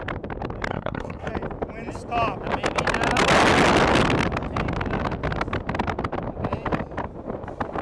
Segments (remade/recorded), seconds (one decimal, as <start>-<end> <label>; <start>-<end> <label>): 0.0-0.7 recorded; 0.7-1.3 remade; 1.3-7.8 recorded